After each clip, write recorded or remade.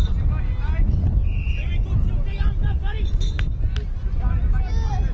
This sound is recorded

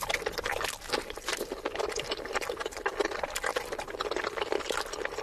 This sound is recorded